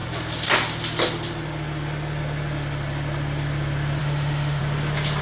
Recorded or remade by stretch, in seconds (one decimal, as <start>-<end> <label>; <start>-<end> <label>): 0.0-4.0 recorded; 4.0-4.6 remade; 4.6-5.2 recorded